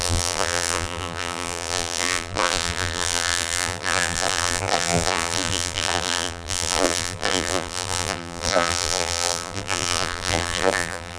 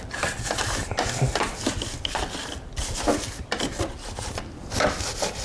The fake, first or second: first